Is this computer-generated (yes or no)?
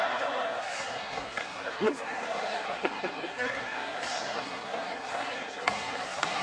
yes